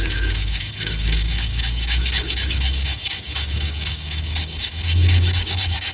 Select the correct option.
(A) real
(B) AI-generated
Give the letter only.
B